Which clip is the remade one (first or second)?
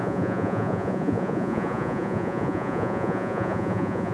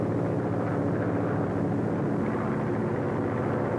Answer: first